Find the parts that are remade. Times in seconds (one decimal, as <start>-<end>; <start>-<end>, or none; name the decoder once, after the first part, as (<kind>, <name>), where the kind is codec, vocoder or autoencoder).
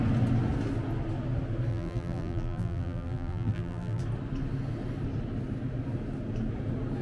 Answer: 1.7-4.0 (vocoder, BigVGAN v2)